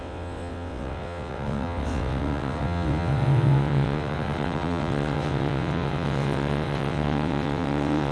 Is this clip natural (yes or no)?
no